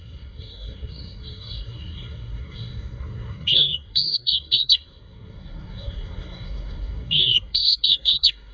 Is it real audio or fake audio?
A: fake